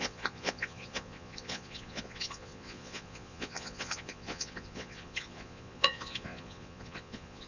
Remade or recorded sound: remade